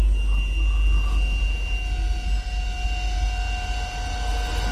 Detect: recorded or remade recorded